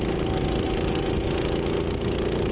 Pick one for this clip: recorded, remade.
recorded